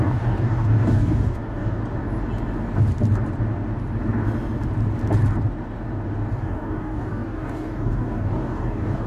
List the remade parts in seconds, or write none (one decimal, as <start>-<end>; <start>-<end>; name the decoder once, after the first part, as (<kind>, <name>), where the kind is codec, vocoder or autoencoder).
0.0-1.8 (codec, DAC); 6.3-9.1